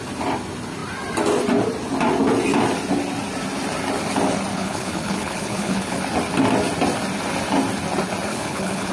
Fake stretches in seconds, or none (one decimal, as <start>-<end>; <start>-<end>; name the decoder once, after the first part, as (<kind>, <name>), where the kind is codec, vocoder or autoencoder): 4.5-6.0 (codec, HILCodec); 8.3-8.9